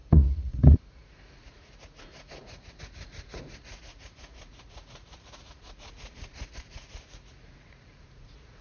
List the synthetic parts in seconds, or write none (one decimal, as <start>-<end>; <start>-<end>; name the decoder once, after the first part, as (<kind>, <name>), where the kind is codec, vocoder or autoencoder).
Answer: 0.0-8.6 (vocoder, Vocos)